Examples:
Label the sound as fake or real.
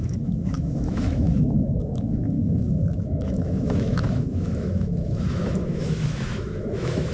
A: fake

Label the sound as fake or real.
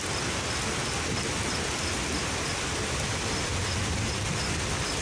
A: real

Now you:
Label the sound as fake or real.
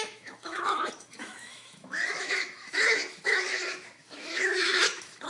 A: fake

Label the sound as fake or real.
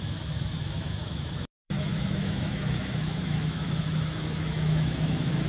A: fake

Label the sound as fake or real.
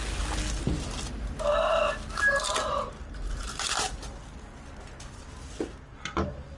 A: real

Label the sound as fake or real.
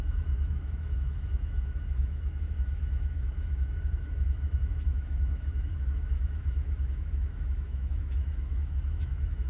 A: fake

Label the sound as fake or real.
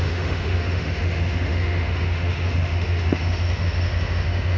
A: fake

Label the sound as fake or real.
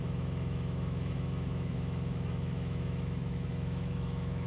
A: fake